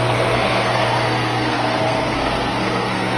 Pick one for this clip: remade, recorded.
remade